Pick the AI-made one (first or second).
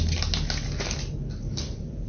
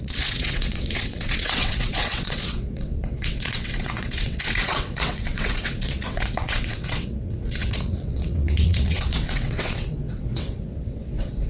second